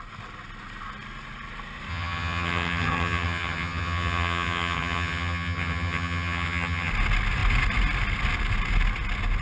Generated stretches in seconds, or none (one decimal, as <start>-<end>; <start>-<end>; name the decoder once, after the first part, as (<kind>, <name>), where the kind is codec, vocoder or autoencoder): 1.9-6.9 (vocoder, HiFi-GAN)